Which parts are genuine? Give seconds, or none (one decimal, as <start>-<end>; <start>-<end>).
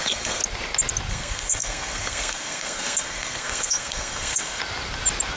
0.4-1.1; 4.6-5.4